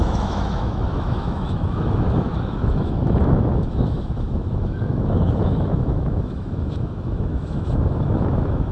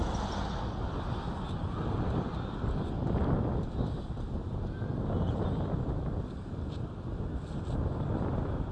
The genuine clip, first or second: second